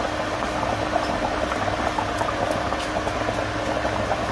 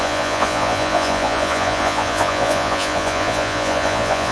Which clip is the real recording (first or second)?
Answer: first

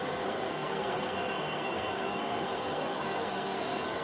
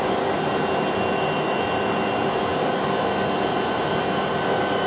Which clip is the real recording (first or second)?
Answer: second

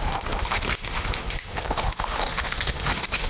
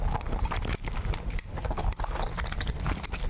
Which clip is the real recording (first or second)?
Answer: second